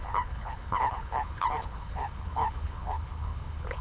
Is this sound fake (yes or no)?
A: yes